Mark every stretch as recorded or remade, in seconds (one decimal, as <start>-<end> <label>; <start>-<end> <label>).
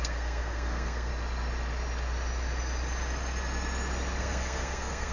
0.0-1.1 remade; 1.1-4.2 recorded; 4.2-5.1 remade